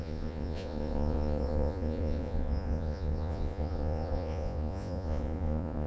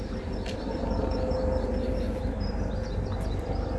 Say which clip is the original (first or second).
second